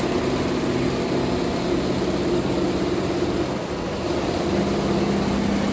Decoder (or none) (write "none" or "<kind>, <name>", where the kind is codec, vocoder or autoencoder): none